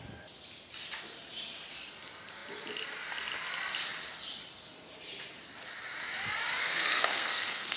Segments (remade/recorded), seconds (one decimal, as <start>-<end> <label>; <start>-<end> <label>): 0.0-6.6 recorded; 6.6-7.8 remade